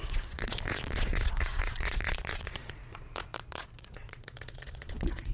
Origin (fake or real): fake